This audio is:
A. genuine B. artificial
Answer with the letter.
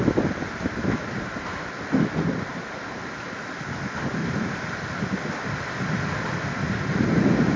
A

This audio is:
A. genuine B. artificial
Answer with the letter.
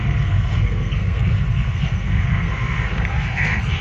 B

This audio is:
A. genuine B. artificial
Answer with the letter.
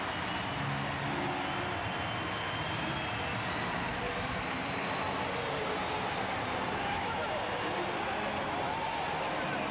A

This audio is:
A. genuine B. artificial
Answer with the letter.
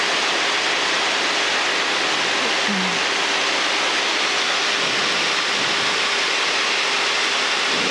A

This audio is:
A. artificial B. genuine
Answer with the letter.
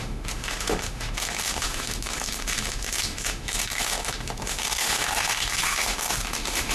A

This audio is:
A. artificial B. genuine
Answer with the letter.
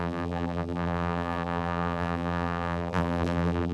A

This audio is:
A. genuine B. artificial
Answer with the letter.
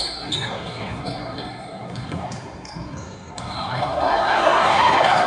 B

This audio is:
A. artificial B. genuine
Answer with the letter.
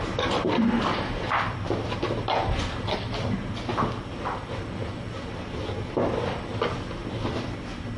B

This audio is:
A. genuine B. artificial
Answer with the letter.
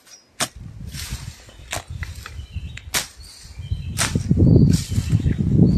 A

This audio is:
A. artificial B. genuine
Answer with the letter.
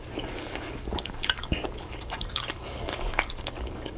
A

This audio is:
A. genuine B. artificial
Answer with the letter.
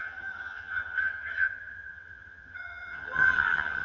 B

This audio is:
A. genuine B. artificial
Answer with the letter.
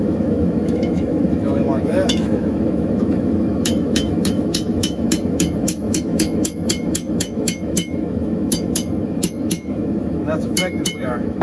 B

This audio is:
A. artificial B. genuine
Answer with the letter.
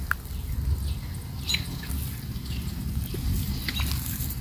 B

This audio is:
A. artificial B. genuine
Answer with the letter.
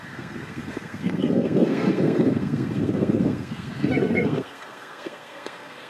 A